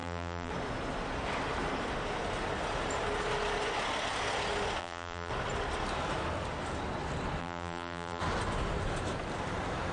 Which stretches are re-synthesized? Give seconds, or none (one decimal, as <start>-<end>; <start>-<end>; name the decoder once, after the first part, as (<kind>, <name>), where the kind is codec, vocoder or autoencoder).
0.0-0.5 (vocoder, BigVGAN v2); 4.8-5.3; 7.4-8.2